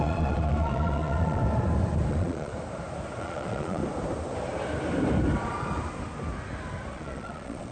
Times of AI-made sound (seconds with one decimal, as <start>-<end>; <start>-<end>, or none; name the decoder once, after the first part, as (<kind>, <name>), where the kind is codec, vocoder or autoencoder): 0.0-1.4 (vocoder, Vocos); 2.1-2.5; 3.2-3.8; 6.9-7.7